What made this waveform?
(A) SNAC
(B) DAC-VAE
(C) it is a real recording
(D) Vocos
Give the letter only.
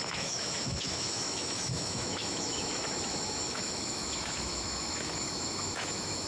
B